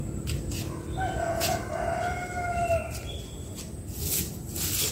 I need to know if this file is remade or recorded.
recorded